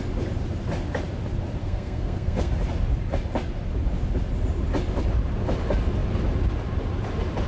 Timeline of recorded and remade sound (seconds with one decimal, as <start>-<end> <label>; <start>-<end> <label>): 0.0-1.6 recorded; 1.6-2.5 remade; 2.5-7.5 recorded